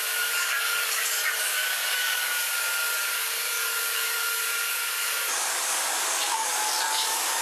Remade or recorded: remade